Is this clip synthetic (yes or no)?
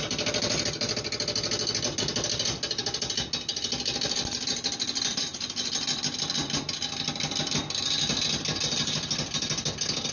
no